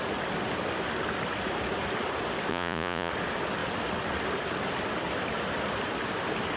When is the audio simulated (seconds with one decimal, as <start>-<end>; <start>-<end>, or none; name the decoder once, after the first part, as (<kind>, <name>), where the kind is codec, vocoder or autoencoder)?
2.5-3.1 (vocoder, Vocos)